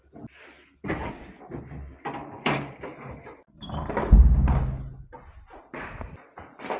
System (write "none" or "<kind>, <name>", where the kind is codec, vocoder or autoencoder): none